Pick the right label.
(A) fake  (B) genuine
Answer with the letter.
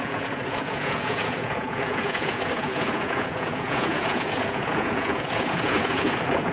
A